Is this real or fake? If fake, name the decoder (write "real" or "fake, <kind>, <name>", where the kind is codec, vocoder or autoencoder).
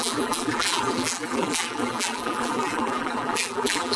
fake, vocoder, BigVGAN v2